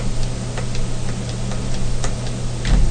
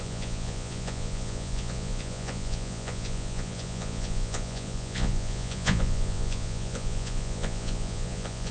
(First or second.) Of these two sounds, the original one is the first